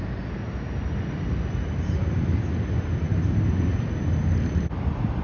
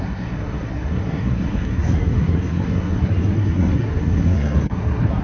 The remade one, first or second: second